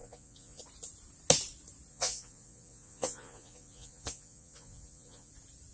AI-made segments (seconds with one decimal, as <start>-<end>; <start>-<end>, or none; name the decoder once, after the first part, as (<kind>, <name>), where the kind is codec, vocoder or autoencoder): 0.0-0.6 (vocoder, Vocos); 1.9-5.3